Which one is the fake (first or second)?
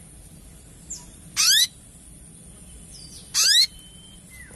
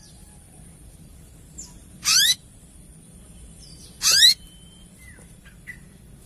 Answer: second